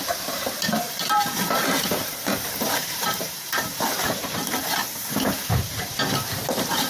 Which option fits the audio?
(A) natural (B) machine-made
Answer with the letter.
B